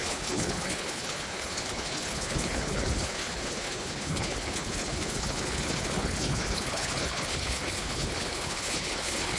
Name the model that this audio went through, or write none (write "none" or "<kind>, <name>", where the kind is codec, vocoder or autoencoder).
codec, HILCodec